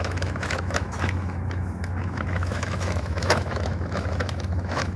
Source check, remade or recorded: remade